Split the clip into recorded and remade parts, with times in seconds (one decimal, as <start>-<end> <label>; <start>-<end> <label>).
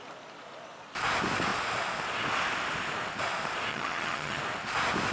0.0-3.7 recorded; 3.7-4.4 remade; 4.4-5.1 recorded